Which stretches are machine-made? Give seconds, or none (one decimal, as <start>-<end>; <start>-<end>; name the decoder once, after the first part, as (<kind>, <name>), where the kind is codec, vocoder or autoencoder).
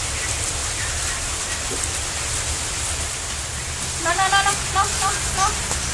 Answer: none